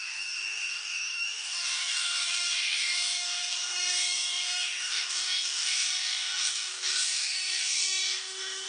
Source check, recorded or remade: remade